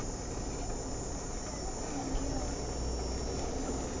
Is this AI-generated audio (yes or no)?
no